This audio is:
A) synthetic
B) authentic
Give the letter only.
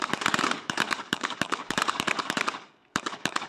A